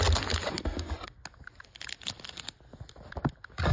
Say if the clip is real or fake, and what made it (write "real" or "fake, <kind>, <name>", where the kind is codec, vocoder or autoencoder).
real